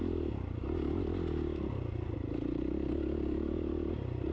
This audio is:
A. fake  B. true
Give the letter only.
B